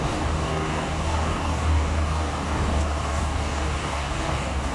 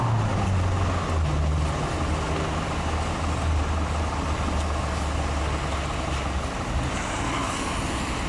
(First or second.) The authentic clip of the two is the second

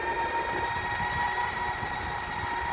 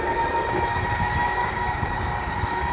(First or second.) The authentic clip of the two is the first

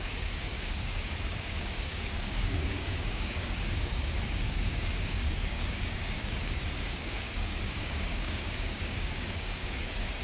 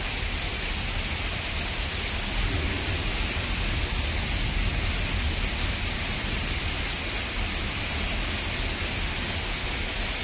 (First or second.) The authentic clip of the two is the second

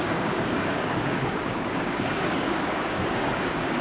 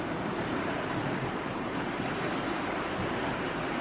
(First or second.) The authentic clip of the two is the second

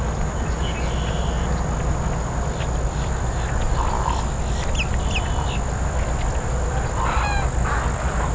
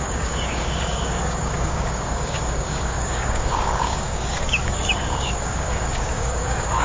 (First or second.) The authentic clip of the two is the first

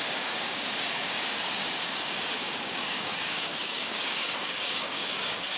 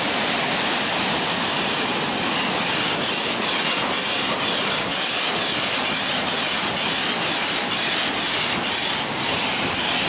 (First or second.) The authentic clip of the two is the second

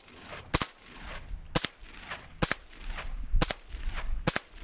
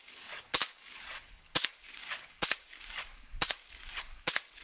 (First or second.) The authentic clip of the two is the first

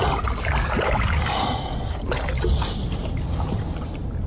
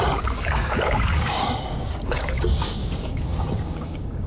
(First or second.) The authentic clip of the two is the first